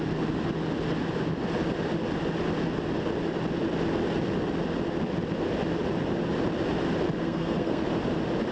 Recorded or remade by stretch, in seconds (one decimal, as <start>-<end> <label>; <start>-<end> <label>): 0.0-7.2 recorded; 7.2-7.8 remade; 7.8-8.5 recorded